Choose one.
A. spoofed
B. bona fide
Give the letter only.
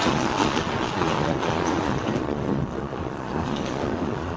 A